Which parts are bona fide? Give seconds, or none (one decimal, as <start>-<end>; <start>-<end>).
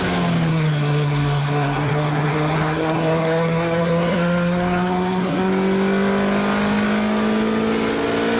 0.0-0.5; 5.5-8.4